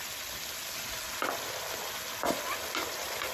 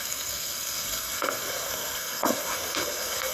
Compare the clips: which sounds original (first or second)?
first